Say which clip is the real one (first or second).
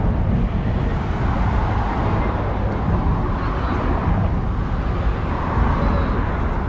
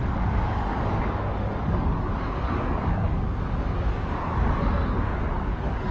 first